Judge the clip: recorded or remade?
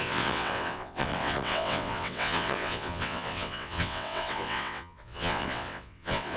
remade